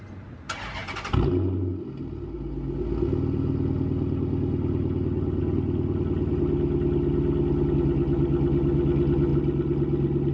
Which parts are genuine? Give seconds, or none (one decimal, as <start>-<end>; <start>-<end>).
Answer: 0.0-10.3